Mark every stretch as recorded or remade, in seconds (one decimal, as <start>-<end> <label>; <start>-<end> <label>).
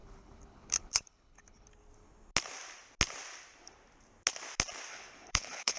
0.0-1.7 remade; 1.7-4.9 recorded; 4.9-5.8 remade